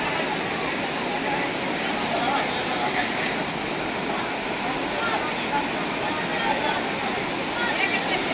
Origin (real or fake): real